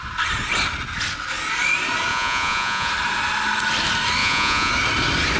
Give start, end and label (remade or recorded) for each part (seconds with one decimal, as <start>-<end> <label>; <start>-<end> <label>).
0.0-2.1 recorded; 2.1-2.9 remade; 2.9-4.2 recorded; 4.2-4.7 remade; 4.7-5.4 recorded